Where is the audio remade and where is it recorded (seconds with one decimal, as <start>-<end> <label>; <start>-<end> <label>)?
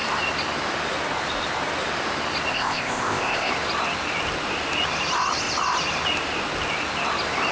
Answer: 0.0-2.5 recorded; 2.5-3.5 remade; 3.5-7.5 recorded